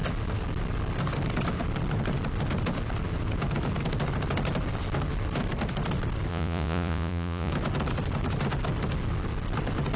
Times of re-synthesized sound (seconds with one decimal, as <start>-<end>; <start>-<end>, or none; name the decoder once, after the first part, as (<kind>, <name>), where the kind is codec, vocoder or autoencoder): 6.3-7.5 (vocoder, Vocos)